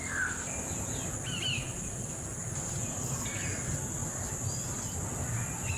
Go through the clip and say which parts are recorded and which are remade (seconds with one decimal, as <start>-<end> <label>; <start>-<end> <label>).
0.0-5.8 recorded